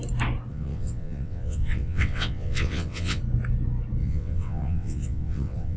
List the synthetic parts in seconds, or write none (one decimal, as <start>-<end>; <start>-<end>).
0.5-3.2; 4.0-5.8